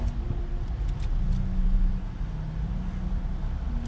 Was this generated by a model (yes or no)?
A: no